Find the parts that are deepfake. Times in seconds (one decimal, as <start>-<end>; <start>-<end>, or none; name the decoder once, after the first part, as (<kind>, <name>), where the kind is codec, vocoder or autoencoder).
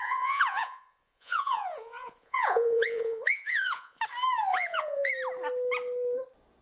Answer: 0.0-4.0 (vocoder, Vocos); 4.5-5.1